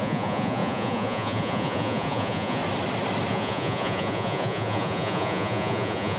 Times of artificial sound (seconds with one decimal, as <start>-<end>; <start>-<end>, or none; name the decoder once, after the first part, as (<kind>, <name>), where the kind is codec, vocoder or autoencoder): 0.0-2.6 (vocoder, Vocos); 3.3-6.2